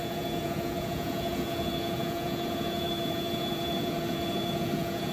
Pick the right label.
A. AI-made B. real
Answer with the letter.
A